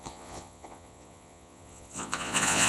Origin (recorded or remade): remade